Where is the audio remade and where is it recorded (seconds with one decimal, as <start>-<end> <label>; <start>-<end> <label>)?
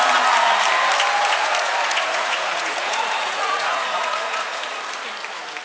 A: 0.0-1.2 recorded; 1.2-4.6 remade; 4.6-5.6 recorded